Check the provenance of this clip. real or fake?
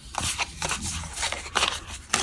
real